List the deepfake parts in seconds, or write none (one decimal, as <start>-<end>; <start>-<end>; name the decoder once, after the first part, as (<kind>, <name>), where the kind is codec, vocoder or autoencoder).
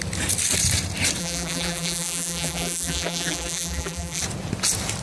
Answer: 1.2-4.2 (vocoder, BigVGAN v2)